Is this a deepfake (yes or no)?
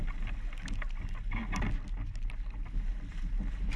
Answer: no